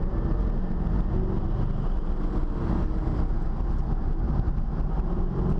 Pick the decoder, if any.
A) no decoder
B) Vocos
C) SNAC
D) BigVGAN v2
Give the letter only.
A